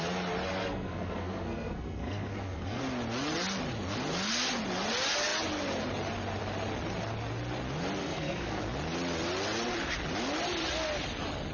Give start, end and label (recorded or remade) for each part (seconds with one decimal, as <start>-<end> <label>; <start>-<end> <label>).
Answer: 0.0-0.6 recorded; 0.6-2.8 remade; 2.8-8.0 recorded; 8.0-8.6 remade; 8.6-11.5 recorded